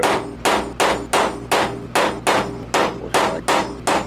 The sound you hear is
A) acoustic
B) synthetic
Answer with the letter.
A